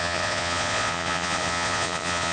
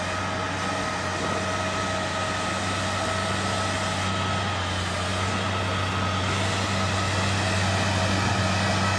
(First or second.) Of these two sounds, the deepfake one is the first